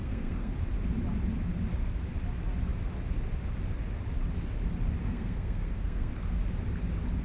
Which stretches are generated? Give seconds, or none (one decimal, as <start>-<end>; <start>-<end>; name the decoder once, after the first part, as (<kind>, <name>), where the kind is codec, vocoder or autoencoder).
0.0-0.5 (codec, SNAC); 5.0-6.1